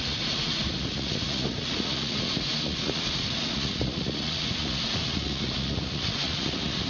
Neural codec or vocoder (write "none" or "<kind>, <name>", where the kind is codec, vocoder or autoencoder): vocoder, Vocos